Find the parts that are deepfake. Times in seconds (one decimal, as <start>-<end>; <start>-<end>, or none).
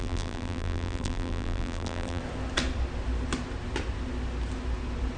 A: 0.0-2.2